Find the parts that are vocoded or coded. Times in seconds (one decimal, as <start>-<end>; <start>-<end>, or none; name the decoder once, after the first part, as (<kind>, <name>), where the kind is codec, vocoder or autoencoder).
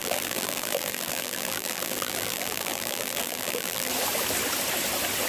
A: 0.0-3.9 (vocoder, BigVGAN v2)